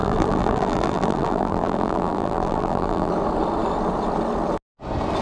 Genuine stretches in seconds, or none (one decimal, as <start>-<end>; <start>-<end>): 3.1-5.2